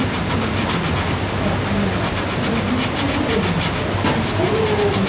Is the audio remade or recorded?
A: recorded